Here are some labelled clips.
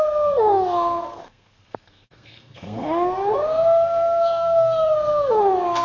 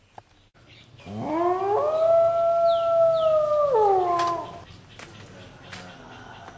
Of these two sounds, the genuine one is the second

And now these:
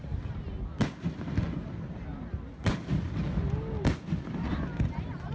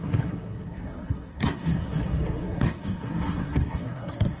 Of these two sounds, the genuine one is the first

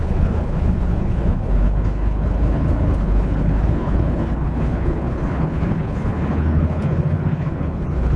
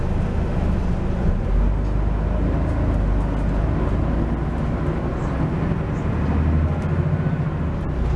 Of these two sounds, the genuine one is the second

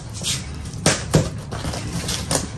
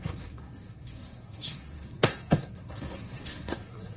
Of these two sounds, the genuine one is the first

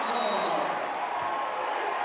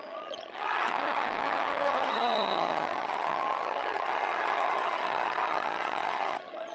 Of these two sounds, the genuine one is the first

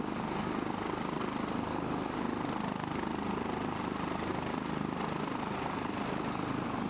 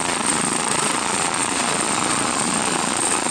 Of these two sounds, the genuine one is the first